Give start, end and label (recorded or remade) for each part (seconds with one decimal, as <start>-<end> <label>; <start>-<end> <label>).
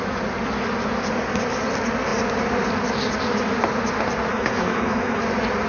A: 0.0-4.3 recorded; 4.3-5.2 remade; 5.2-5.7 recorded